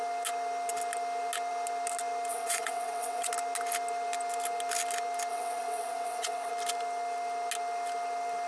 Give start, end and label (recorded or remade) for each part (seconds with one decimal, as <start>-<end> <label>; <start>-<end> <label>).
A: 0.0-2.3 recorded; 2.3-3.3 remade; 3.3-5.3 recorded; 5.3-6.5 remade; 6.5-8.5 recorded